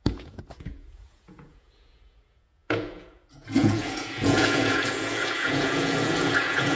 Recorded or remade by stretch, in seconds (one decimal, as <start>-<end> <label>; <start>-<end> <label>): 0.0-6.8 remade

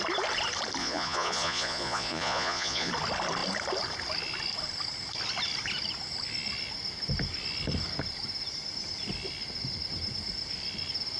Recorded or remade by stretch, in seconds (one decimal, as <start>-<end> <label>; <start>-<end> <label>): 0.0-0.8 recorded; 0.8-2.9 remade; 2.9-11.2 recorded

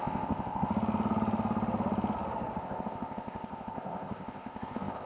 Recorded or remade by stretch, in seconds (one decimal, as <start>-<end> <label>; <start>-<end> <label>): 0.0-0.7 remade; 0.7-2.6 recorded; 2.6-5.1 remade

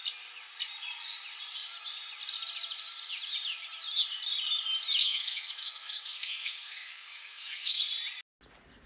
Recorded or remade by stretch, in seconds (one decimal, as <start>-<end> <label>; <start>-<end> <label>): 0.0-5.0 recorded; 5.0-7.8 remade; 7.8-8.9 recorded

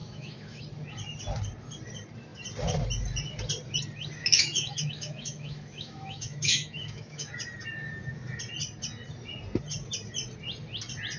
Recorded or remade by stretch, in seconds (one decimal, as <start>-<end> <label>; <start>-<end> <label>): 0.0-0.6 remade; 0.6-4.2 recorded; 4.2-7.3 remade; 7.3-11.2 recorded

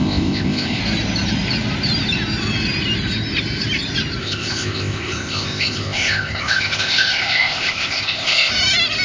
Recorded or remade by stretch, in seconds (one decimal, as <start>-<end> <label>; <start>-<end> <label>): 0.0-0.8 remade; 0.8-4.2 recorded; 4.2-8.5 remade; 8.5-9.0 recorded

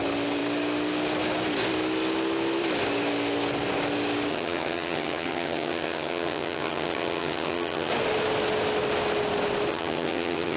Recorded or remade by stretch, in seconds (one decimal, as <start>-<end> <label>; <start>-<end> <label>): 0.0-4.3 recorded; 4.3-7.9 remade; 7.9-9.7 recorded; 9.7-10.6 remade

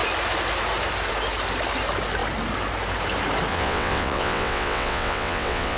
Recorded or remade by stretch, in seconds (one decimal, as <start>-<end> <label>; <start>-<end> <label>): 0.0-3.5 recorded; 3.5-5.8 remade